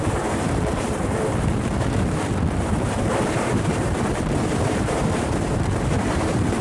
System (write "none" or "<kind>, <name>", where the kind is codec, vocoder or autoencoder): vocoder, BigVGAN v2